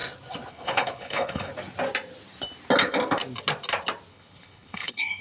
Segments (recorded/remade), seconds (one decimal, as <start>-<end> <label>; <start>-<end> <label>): 0.0-0.5 recorded; 0.5-1.5 remade; 1.5-4.1 recorded; 4.1-5.2 remade